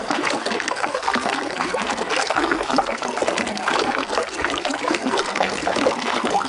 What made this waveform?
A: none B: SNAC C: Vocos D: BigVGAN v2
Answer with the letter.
B